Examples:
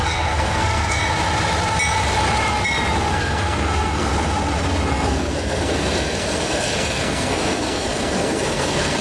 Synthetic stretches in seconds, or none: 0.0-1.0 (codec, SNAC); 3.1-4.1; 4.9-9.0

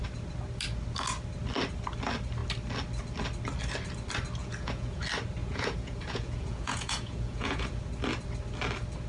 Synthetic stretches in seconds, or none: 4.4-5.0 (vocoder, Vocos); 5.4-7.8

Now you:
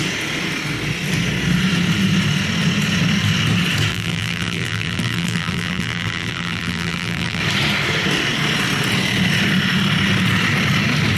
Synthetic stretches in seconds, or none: 3.9-7.4 (vocoder, BigVGAN v2)

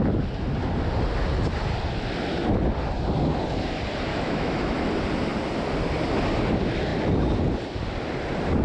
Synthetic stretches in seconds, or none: 4.1-4.8 (autoencoder, DAC-VAE)